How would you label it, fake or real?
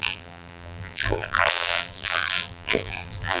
fake